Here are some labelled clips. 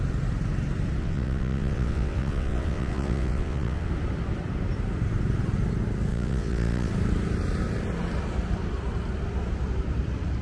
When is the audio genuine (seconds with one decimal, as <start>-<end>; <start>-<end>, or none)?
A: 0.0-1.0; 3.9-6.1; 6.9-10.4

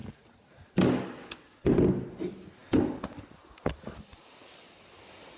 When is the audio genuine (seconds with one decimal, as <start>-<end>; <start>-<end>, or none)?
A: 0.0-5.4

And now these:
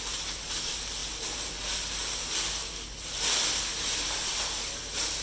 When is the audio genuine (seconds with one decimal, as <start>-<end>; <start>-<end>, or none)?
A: 0.0-5.2

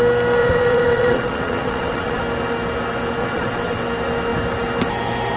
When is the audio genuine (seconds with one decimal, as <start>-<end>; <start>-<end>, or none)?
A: 0.0-0.4; 2.2-3.2; 3.8-5.4

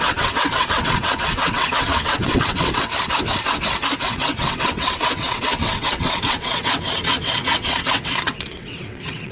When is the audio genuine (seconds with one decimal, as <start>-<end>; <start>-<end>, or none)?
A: 2.9-4.0